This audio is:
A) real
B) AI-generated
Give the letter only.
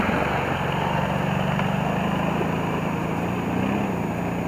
A